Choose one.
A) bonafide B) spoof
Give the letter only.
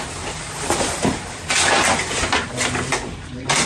A